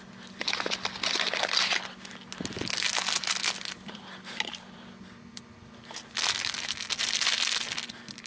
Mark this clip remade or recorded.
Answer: recorded